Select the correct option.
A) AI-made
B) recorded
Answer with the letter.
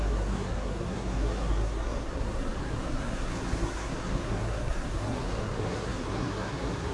A